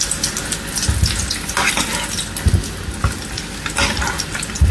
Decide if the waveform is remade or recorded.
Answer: recorded